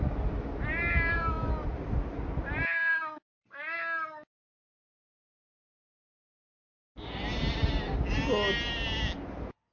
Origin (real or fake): real